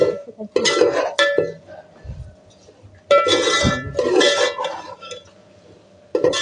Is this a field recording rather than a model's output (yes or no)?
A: yes